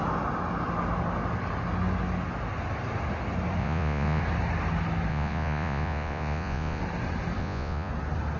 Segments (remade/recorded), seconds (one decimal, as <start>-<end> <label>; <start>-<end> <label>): 0.0-3.6 recorded; 3.6-4.2 remade; 4.2-5.1 recorded; 5.1-6.8 remade; 6.8-7.4 recorded; 7.4-7.9 remade; 7.9-8.4 recorded